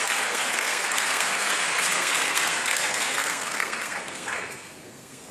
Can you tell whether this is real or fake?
fake